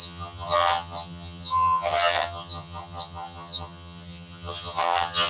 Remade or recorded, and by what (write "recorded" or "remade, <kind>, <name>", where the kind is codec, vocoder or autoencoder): remade, vocoder, HiFi-GAN